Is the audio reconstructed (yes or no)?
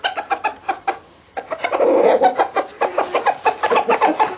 no